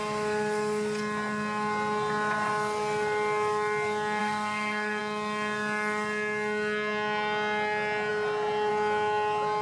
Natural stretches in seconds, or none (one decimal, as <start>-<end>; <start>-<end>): 0.0-4.2; 5.0-9.6